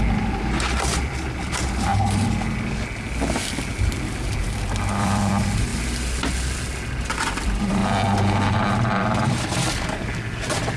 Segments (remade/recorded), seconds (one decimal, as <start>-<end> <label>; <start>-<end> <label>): 0.0-1.9 remade; 1.9-4.4 recorded; 4.4-5.7 remade; 5.7-7.0 recorded; 7.0-7.8 remade; 7.8-8.5 recorded; 8.5-10.8 remade